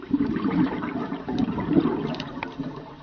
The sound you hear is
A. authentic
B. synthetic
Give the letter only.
B